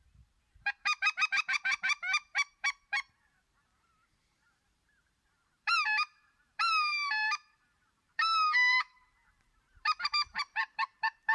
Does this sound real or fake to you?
fake